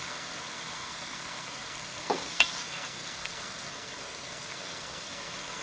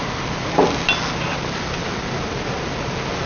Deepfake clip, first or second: first